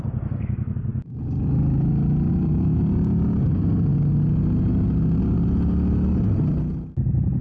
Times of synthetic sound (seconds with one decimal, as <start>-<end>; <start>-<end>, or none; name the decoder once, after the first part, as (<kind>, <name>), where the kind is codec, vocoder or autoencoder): none